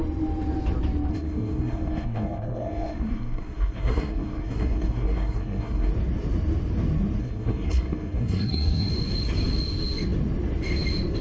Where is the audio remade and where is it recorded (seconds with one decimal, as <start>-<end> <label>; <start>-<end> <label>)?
0.0-1.1 recorded; 1.1-5.9 remade; 5.9-7.2 recorded; 7.2-8.9 remade; 8.9-11.2 recorded